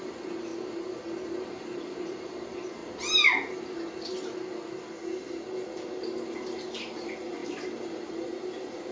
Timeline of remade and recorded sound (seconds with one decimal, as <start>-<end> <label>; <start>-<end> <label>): 0.0-0.5 remade; 0.5-1.5 recorded; 1.5-2.8 remade; 2.8-6.8 recorded; 6.8-8.9 remade